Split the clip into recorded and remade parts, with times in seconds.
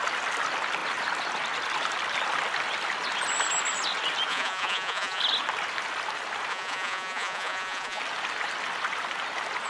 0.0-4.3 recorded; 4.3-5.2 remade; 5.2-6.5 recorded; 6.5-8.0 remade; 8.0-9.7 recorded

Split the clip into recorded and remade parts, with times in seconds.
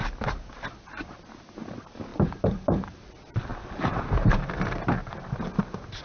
0.0-2.1 recorded; 2.1-3.1 remade; 3.1-3.5 recorded; 3.5-4.5 remade; 4.5-6.0 recorded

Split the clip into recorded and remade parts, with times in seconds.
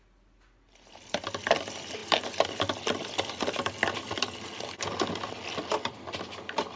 0.0-6.8 recorded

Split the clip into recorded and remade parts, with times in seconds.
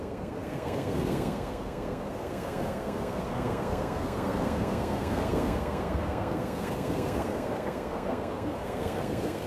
0.0-9.5 remade